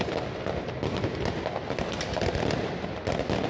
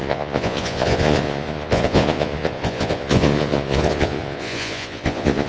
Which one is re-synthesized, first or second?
second